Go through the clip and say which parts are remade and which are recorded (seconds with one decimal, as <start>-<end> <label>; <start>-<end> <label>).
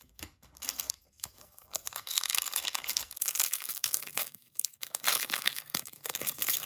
0.0-6.7 remade